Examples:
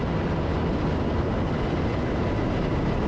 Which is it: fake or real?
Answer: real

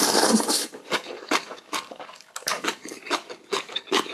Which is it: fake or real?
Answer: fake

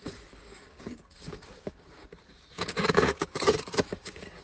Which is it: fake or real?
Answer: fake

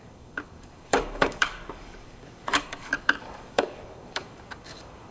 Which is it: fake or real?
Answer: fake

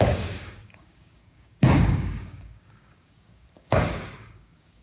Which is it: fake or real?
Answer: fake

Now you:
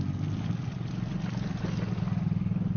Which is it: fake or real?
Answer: real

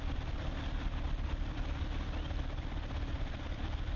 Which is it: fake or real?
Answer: real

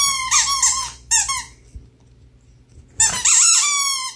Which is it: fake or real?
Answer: real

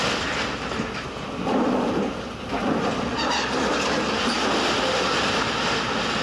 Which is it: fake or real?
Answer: real